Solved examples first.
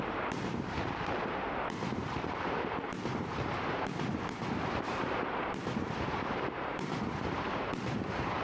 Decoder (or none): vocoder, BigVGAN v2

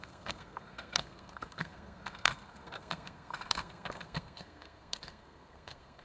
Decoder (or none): codec, SNAC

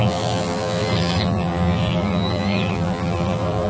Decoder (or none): vocoder, BigVGAN v2